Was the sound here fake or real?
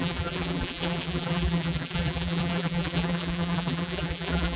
fake